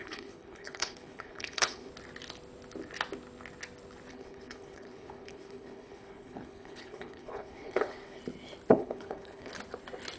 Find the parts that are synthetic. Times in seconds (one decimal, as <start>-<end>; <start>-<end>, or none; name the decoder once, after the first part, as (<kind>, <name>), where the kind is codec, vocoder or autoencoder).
0.0-1.9 (codec, HILCodec); 4.1-8.2; 8.7-9.5

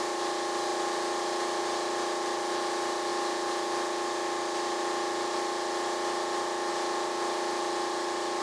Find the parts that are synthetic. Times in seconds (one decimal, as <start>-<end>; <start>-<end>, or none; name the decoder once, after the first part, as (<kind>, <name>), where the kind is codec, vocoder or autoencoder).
none

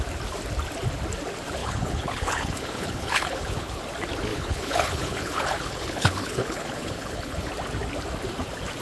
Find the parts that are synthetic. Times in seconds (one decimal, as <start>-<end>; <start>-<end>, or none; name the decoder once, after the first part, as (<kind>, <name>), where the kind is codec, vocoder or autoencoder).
1.6-3.8 (codec, HILCodec); 4.3-7.5

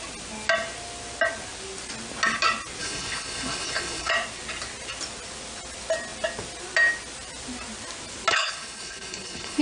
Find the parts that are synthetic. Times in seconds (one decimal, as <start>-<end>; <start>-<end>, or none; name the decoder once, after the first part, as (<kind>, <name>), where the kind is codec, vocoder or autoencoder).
2.8-4.1 (codec, HILCodec); 8.3-9.6

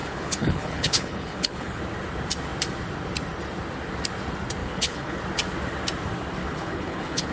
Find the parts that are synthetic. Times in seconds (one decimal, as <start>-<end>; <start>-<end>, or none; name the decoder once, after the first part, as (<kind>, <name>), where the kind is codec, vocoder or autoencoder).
0.0-1.8 (codec, HILCodec); 4.6-5.2; 6.4-7.3

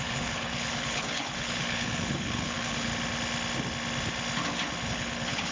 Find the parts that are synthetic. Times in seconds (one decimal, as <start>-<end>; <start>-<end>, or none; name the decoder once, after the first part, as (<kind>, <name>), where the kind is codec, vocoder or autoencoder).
0.0-2.9 (codec, HILCodec); 4.9-5.5